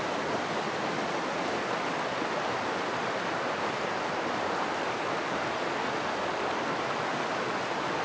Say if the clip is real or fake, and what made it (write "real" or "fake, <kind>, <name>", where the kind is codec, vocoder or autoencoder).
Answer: real